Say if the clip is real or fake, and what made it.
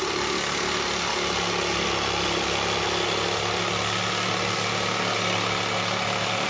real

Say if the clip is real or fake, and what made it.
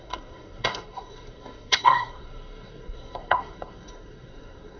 fake, codec, SNAC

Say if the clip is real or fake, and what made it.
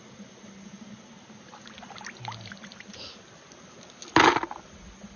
real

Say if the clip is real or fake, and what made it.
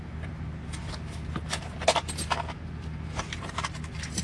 real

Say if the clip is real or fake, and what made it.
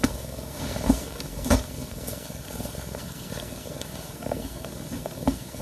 fake, codec, SNAC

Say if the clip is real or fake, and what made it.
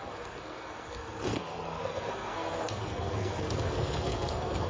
fake, codec, SNAC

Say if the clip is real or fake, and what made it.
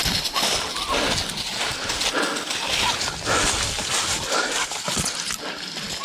real